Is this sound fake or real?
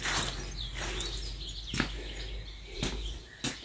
real